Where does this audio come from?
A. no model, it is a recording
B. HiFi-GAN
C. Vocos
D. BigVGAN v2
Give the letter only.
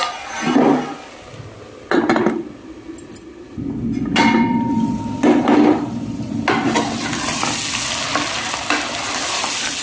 A